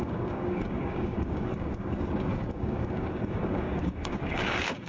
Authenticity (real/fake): fake